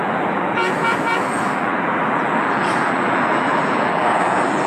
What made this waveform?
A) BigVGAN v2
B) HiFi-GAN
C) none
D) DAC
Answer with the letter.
A